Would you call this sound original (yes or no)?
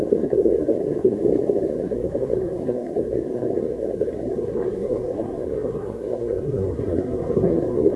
no